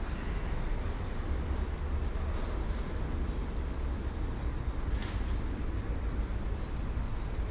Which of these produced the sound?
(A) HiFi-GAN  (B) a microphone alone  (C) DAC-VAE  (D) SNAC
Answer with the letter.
B